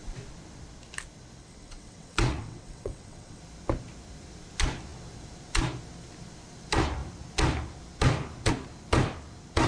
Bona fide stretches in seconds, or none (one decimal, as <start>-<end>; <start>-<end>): 0.0-1.4; 3.4-9.7